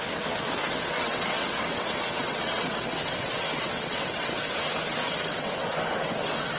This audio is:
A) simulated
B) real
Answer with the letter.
A